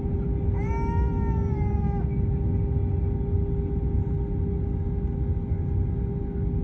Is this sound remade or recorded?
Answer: recorded